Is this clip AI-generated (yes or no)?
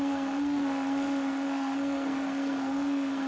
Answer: yes